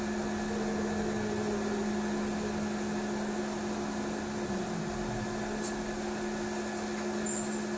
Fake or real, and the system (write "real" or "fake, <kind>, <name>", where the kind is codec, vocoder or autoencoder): real